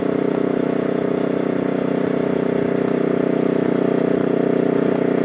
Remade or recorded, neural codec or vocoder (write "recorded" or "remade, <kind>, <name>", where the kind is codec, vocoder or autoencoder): recorded